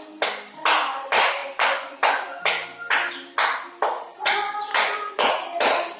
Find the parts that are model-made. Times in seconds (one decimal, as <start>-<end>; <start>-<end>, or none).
1.4-2.4; 4.7-5.3